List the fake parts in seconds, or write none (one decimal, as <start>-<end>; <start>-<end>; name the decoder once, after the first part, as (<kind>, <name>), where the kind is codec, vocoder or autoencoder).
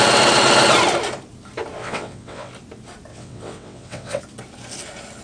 1.8-2.5 (vocoder, WaveNeXt); 3.1-4.2